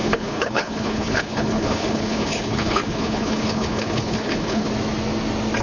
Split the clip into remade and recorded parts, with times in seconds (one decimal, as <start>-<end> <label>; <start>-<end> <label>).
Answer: 0.0-4.7 remade; 4.7-5.6 recorded